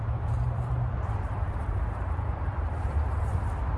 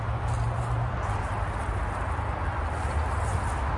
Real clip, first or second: second